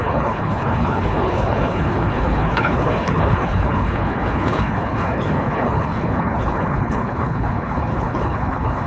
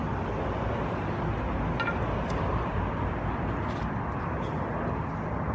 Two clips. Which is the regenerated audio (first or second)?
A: first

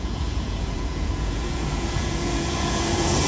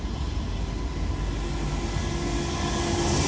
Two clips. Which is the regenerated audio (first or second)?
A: first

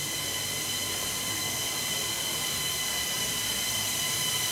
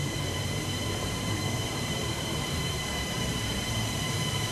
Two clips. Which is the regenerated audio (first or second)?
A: second